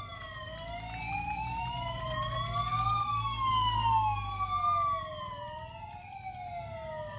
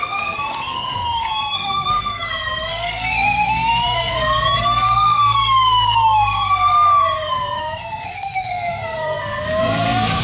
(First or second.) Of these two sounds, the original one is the first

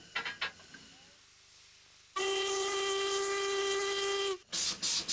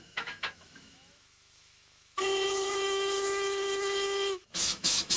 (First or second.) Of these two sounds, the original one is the first